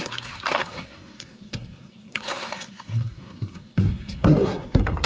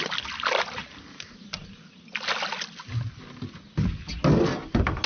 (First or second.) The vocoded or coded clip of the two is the first